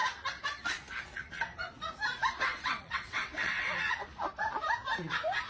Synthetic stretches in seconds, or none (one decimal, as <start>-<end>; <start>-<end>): 2.5-3.7